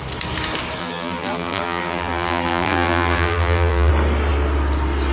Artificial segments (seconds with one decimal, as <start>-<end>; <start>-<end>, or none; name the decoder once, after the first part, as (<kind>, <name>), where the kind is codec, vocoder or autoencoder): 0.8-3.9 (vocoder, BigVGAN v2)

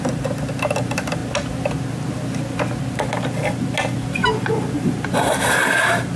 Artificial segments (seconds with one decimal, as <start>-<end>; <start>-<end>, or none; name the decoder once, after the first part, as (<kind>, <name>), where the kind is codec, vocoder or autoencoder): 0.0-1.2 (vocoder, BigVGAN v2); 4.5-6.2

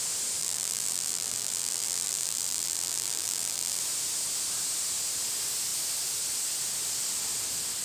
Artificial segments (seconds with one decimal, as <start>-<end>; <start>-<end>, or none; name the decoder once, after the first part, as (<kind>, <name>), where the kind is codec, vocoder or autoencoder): 0.4-3.8 (vocoder, BigVGAN v2)